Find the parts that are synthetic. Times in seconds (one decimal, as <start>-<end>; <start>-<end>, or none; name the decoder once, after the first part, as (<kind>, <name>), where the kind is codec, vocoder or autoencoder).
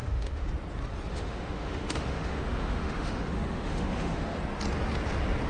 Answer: 0.0-0.5 (autoencoder, DAC-VAE); 1.1-4.4